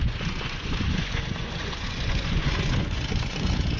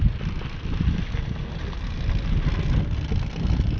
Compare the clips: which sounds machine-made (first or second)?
first